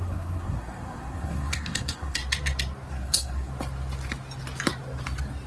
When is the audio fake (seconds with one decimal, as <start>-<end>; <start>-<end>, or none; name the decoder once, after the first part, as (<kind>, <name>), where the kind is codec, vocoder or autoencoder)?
0.0-2.2 (codec, SNAC); 2.9-3.5